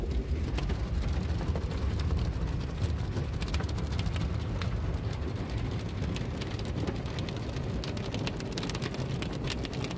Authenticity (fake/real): real